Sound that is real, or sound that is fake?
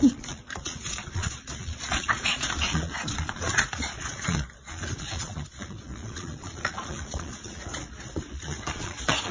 fake